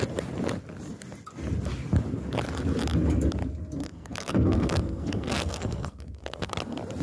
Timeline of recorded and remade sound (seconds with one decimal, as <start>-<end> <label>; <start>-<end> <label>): 0.0-3.8 recorded; 3.8-6.5 remade; 6.5-7.0 recorded